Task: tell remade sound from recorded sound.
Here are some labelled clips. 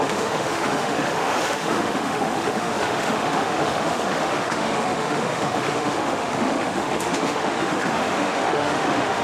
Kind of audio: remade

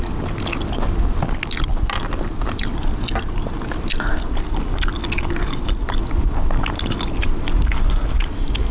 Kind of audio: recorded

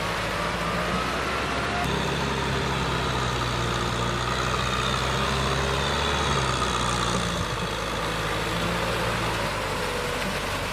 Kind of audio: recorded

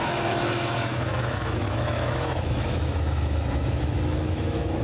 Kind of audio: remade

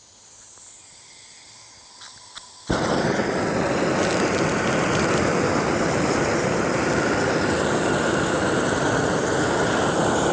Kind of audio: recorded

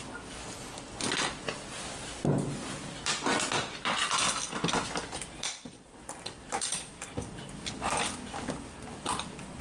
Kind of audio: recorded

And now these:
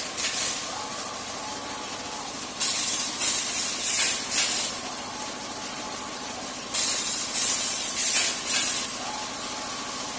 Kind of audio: recorded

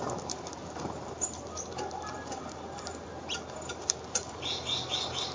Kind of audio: recorded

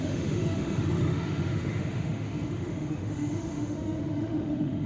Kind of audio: remade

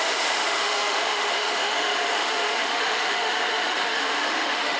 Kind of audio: remade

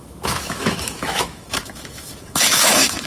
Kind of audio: remade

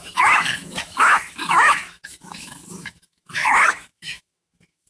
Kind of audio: remade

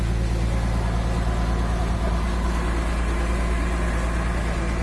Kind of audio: recorded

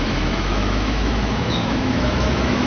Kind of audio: remade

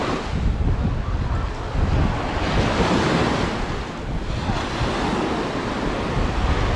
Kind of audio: recorded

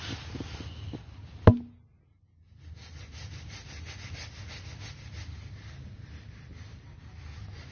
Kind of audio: recorded